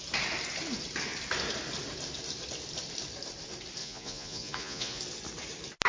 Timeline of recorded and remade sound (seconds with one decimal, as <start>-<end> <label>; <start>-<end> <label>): 0.0-3.8 recorded; 3.8-5.0 remade; 5.0-5.9 recorded